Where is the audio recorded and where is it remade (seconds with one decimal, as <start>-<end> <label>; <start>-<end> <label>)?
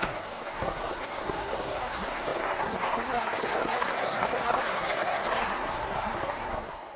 0.0-7.0 remade